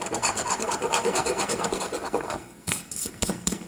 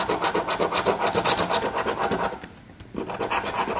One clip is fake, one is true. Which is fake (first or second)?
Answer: first